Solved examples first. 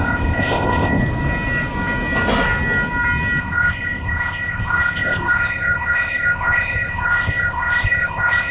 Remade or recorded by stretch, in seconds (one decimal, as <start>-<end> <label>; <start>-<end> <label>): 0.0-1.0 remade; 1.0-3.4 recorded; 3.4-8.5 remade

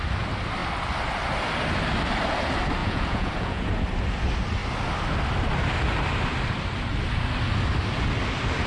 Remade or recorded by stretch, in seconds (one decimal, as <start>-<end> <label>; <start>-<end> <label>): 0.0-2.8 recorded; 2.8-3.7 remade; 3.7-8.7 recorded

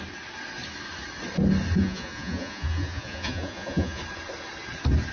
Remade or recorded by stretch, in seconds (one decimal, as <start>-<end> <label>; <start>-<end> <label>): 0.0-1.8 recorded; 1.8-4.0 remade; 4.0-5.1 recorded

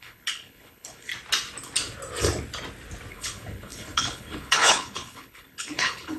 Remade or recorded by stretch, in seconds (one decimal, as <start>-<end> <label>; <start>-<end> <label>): 0.0-1.1 remade; 1.1-3.1 recorded; 3.1-6.2 remade

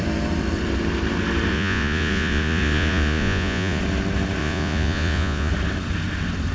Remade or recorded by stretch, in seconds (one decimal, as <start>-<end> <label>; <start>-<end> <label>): 0.0-1.5 recorded; 1.5-3.8 remade; 3.8-4.4 recorded; 4.4-5.5 remade; 5.5-6.5 recorded

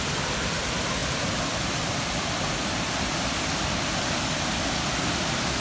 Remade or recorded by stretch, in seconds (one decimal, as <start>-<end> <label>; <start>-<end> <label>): 0.0-1.0 recorded; 1.0-2.9 remade; 2.9-5.6 recorded